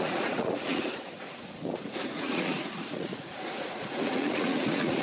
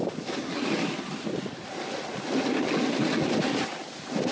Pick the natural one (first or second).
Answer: second